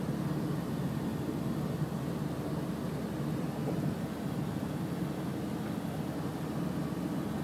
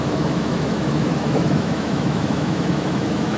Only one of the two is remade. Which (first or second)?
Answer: second